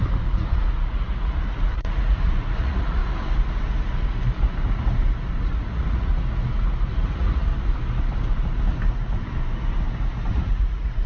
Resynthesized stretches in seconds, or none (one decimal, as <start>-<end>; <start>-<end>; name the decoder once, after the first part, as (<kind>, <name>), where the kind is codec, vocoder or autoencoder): 0.0-3.0 (vocoder, Vocos); 5.4-6.1; 6.9-7.5; 10.3-11.1